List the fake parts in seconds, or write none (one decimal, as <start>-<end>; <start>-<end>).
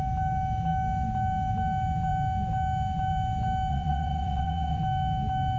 3.7-4.8